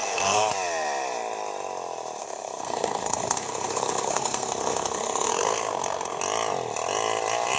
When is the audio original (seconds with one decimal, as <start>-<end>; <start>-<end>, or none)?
0.5-2.2; 6.2-7.6